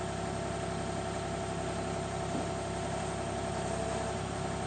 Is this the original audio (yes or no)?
yes